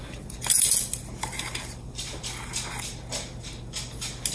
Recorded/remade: recorded